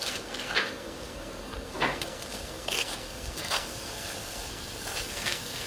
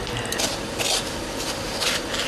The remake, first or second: first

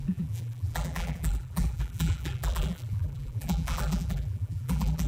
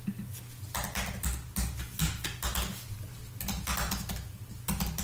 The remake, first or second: first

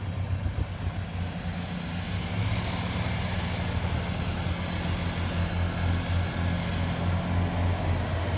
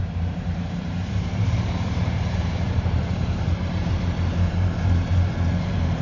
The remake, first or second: second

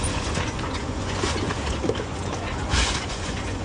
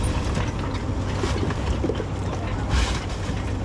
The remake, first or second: first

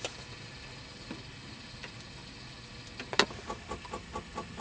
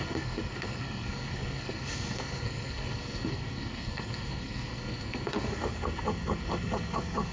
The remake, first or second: second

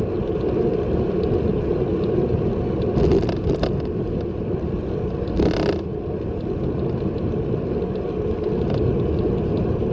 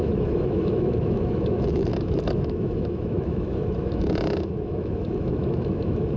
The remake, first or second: second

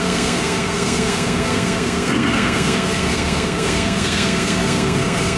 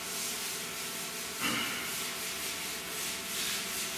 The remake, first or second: first